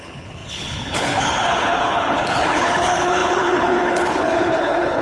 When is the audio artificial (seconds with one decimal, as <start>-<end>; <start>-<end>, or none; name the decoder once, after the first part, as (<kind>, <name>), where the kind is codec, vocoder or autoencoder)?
0.0-5.0 (codec, HILCodec)